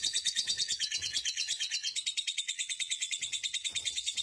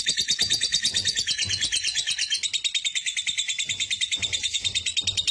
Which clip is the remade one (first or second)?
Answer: first